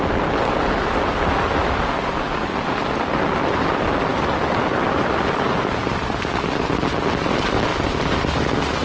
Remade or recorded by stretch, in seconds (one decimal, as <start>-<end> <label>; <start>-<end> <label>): 0.0-8.8 recorded